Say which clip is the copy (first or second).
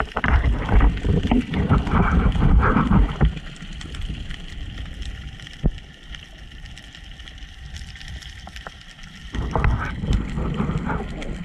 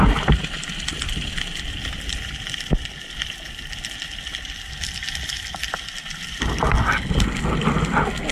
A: first